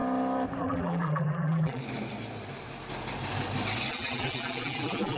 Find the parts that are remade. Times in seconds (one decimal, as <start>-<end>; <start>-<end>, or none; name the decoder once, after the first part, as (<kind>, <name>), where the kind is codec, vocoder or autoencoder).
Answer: 0.6-1.8 (vocoder, BigVGAN v2); 3.9-5.2